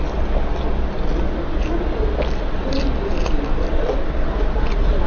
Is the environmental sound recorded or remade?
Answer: recorded